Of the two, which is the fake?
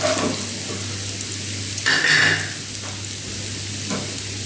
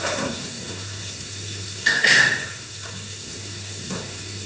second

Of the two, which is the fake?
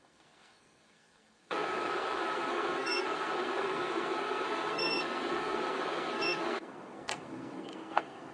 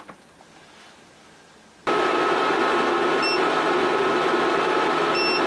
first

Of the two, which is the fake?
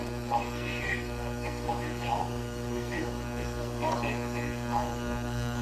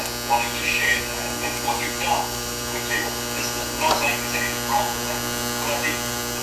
first